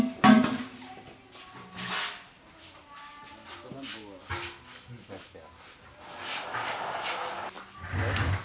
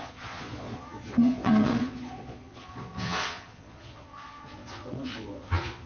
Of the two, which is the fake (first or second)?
second